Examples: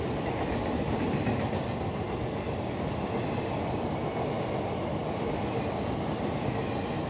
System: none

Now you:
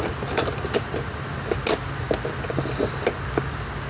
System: none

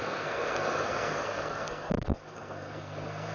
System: codec, SNAC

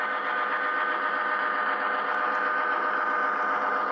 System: none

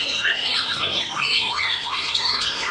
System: codec, SNAC